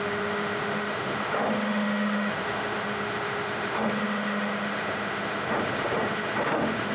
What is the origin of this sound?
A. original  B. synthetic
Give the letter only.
B